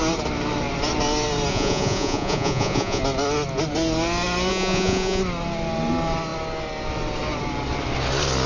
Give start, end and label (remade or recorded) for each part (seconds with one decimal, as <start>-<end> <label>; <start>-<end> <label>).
0.0-1.5 recorded; 1.5-3.0 remade; 3.0-4.5 recorded; 4.5-5.2 remade; 5.2-8.5 recorded